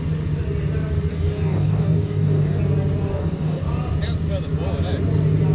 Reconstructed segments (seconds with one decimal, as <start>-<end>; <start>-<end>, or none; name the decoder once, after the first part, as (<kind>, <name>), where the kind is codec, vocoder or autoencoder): 1.1-2.6 (codec, DAC); 3.1-3.6

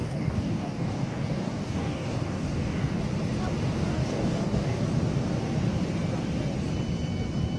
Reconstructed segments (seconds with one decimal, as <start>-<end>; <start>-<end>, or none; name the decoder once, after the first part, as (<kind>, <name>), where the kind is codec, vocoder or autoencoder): 0.0-3.0 (codec, DAC); 3.9-4.8

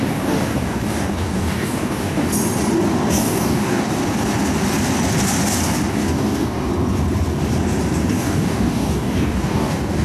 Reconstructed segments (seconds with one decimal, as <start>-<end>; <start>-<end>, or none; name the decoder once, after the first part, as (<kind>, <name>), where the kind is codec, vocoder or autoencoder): 0.0-2.3 (codec, DAC); 3.1-4.0; 5.9-6.7; 8.1-10.0

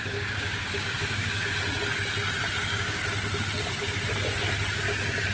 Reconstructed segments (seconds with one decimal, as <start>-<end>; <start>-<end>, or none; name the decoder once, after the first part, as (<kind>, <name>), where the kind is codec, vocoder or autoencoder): 0.0-1.5 (codec, DAC); 2.6-3.0

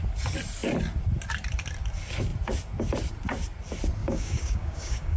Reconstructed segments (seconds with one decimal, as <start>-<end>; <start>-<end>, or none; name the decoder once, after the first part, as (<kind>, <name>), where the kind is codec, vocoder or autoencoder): 4.0-5.2 (codec, DAC)

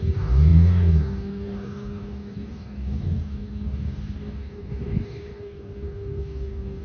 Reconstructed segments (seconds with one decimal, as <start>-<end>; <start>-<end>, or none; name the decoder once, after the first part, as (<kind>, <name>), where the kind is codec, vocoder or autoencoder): 0.0-6.8 (codec, DAC)